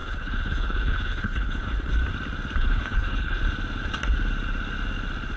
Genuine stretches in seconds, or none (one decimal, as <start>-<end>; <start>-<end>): 1.9-2.6; 3.4-5.4